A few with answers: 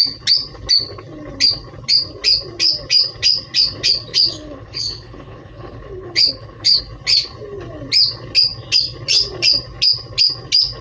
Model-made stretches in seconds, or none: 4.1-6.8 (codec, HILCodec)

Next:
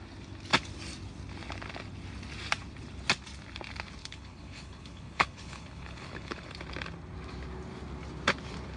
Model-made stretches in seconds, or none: 4.0-6.5 (codec, HILCodec)